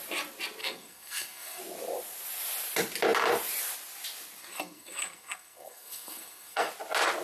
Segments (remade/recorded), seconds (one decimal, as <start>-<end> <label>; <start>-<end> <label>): 0.0-0.6 recorded; 0.6-1.6 remade; 1.6-4.4 recorded; 4.4-6.7 remade; 6.7-7.2 recorded